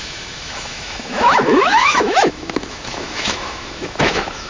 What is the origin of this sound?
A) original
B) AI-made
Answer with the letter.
B